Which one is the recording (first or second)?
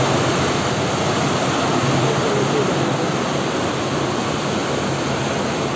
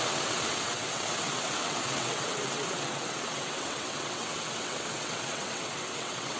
first